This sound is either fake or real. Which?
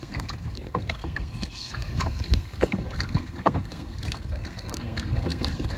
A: fake